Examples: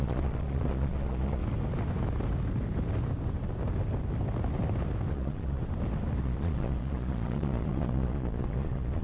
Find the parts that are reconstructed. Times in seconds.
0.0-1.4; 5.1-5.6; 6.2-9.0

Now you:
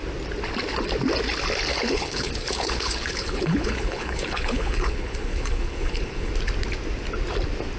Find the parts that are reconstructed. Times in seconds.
1.7-6.3

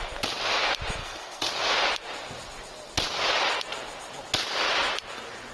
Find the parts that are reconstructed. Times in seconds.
1.0-1.5

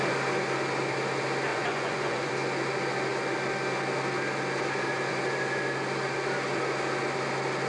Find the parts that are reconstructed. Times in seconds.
1.5-2.3

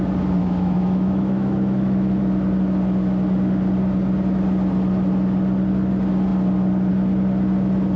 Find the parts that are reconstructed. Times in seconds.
0.4-2.2

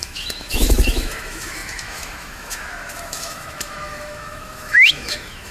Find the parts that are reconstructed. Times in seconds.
0.0-5.5